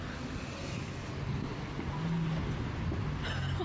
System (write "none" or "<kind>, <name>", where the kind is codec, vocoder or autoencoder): none